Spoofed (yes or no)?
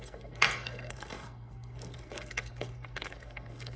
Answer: yes